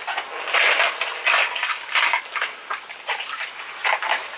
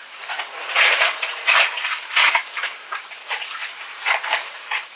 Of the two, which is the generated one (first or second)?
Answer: second